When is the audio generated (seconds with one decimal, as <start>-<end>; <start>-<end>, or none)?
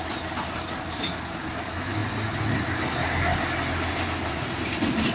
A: 0.0-2.0; 4.3-5.1